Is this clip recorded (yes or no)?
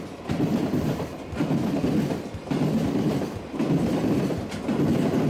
yes